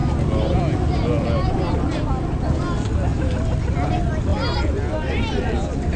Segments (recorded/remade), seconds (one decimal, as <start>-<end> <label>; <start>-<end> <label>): 0.0-6.0 recorded

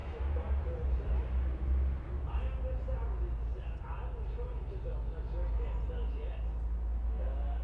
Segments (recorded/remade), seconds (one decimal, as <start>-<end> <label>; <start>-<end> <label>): 0.0-1.1 remade; 1.1-7.6 recorded

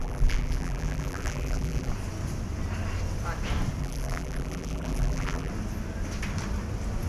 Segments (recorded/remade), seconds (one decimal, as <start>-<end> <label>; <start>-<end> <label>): 0.0-1.9 remade; 1.9-3.8 recorded; 3.8-5.5 remade; 5.5-7.1 recorded

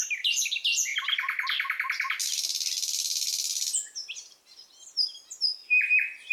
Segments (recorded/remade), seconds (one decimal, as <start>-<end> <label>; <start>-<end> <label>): 0.0-6.3 recorded

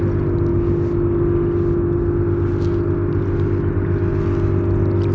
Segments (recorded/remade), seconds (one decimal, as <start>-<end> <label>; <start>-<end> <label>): 0.0-5.1 recorded